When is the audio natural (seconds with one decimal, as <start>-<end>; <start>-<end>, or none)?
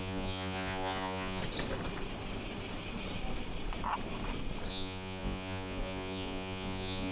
1.4-4.7